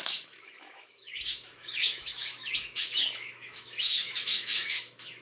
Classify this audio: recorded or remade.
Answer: remade